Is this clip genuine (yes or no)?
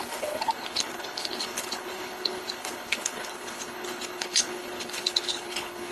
no